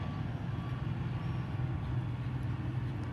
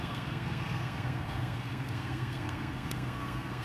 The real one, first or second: first